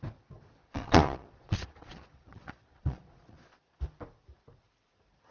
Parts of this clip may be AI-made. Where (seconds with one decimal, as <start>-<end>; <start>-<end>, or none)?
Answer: 0.6-3.8